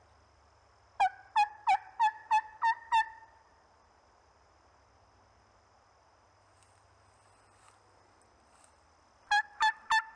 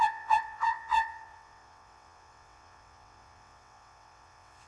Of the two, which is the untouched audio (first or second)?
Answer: first